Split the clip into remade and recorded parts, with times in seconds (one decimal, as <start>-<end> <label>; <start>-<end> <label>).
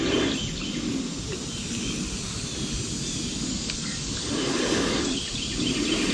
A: 0.0-3.3 recorded; 3.3-5.0 remade; 5.0-6.1 recorded